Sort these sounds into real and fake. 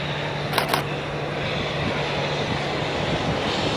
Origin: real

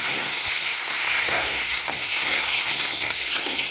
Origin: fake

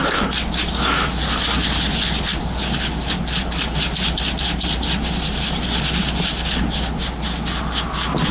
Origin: real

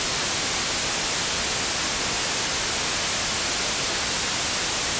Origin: real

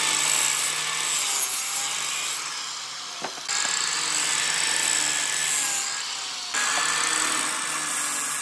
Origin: real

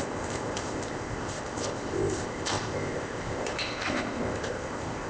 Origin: fake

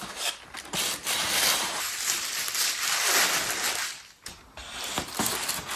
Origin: real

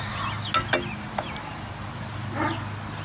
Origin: real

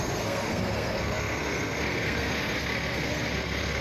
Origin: fake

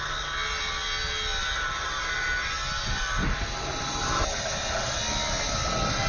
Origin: real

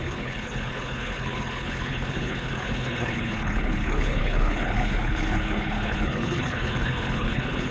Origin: fake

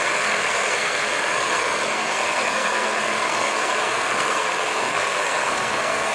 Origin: fake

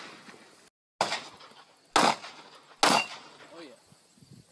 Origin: real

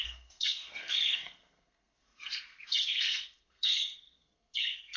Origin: fake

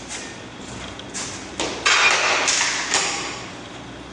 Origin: real